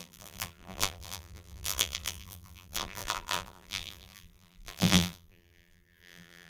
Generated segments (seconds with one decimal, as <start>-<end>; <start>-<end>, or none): 0.0-6.5